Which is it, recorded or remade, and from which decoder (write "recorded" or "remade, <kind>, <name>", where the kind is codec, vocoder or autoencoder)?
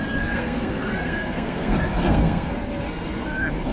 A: remade, codec, SNAC